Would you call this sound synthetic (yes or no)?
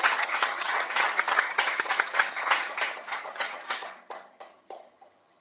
yes